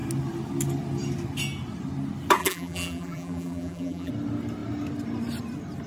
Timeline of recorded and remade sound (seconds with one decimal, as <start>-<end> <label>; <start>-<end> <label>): 0.0-2.4 recorded; 2.4-4.1 remade; 4.1-5.9 recorded